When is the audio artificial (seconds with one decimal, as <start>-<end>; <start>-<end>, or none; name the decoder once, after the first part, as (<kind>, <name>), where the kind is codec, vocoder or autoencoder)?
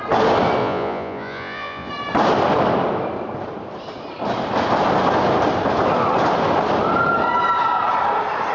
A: 0.6-1.9 (vocoder, Vocos)